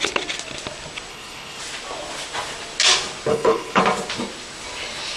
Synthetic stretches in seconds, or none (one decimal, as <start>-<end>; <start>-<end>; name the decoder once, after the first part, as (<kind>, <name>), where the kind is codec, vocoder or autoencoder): 1.1-1.6 (codec, HILCodec); 3.3-3.8